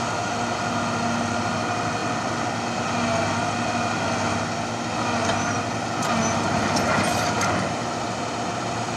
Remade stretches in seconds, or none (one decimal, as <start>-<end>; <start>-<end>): none